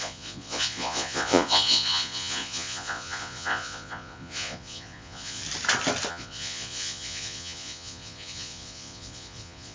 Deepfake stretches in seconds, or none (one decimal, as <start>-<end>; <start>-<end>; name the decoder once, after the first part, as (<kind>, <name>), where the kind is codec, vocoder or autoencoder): 0.0-5.4 (vocoder, Vocos); 6.1-9.7